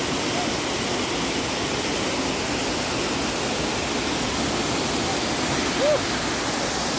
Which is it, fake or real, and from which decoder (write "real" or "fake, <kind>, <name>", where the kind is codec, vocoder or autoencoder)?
real